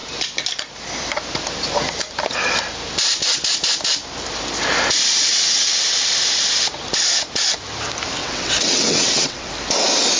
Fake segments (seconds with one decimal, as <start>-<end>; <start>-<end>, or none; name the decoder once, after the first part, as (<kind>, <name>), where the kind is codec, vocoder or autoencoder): 5.3-5.8 (vocoder, WaveNeXt); 8.2-9.5